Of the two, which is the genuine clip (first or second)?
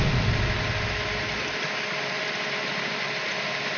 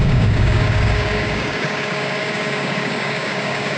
first